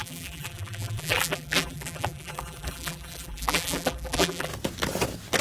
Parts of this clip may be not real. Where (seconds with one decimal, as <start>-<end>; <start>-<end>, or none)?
0.0-4.5